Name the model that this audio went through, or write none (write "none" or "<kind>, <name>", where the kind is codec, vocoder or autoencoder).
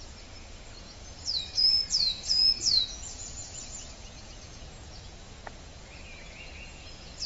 vocoder, Vocos